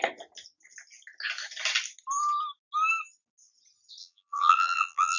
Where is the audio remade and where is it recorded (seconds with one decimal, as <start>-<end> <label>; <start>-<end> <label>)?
0.0-4.0 recorded; 4.0-5.2 remade